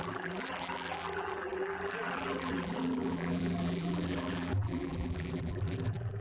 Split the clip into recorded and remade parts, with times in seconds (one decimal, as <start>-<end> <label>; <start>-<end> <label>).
0.0-6.2 remade